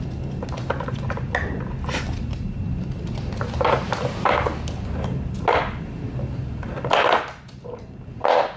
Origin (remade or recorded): recorded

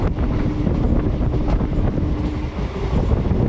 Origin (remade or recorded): recorded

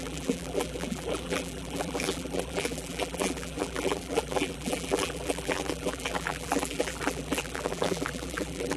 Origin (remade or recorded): remade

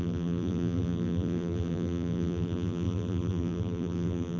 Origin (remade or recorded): remade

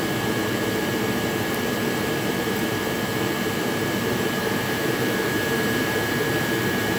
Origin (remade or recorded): remade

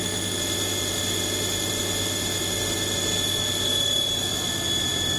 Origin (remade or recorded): recorded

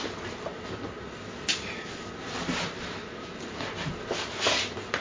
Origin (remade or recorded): recorded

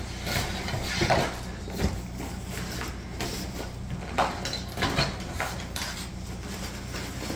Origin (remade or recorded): recorded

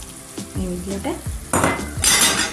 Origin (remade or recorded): recorded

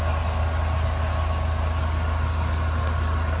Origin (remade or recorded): recorded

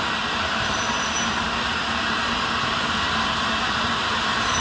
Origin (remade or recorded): remade